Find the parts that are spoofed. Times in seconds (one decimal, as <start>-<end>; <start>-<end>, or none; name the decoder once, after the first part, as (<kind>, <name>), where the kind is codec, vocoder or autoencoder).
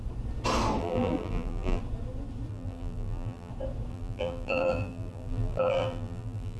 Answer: 0.8-1.8 (vocoder, BigVGAN v2); 2.5-3.5; 3.9-6.6